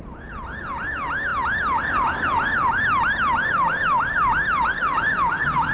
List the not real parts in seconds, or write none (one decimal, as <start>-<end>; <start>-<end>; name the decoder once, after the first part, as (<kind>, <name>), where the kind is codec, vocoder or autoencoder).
none